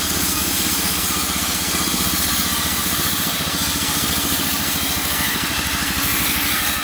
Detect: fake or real fake